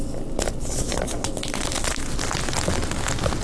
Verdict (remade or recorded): recorded